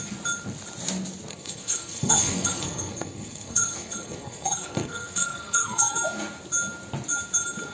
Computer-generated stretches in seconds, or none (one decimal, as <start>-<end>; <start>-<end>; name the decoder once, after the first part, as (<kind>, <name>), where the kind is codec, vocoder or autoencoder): 1.3-5.9 (codec, SNAC)